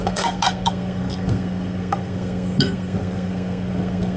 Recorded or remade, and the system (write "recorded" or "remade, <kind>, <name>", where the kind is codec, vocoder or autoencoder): remade, codec, SNAC